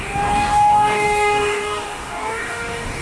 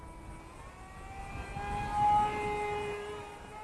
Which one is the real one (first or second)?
second